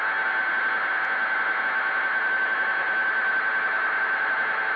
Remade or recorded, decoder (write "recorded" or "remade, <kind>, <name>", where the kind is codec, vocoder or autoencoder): recorded